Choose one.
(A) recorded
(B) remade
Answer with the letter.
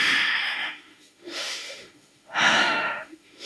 B